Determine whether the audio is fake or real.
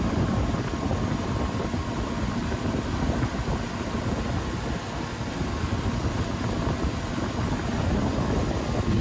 real